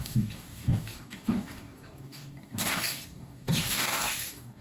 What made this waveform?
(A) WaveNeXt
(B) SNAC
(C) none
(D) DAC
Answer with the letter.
D